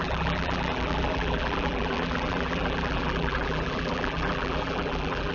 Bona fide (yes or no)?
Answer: no